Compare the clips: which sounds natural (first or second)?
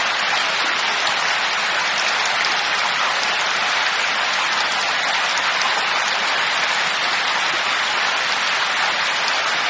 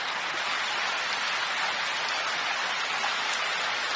second